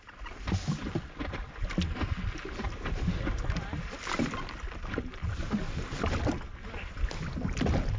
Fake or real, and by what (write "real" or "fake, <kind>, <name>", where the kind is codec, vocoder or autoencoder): real